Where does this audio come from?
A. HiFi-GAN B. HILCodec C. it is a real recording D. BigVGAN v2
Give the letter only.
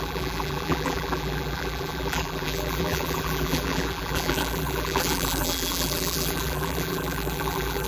D